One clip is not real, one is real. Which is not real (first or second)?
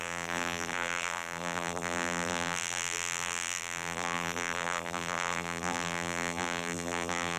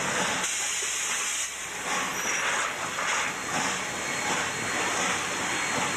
first